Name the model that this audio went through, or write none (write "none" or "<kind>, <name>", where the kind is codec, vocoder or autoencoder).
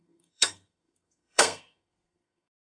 codec, SNAC